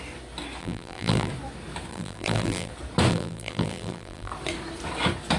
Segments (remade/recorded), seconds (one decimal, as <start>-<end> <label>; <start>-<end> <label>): 0.0-0.6 recorded; 0.6-1.3 remade; 1.3-1.9 recorded; 1.9-2.7 remade; 2.7-3.1 recorded; 3.1-4.3 remade; 4.3-5.4 recorded